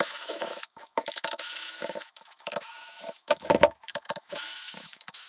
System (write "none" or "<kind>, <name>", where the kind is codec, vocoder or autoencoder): autoencoder, DAC-VAE